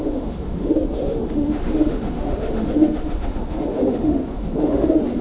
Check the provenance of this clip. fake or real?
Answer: fake